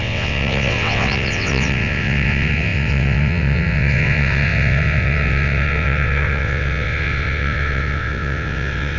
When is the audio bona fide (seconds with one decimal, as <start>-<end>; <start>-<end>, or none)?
none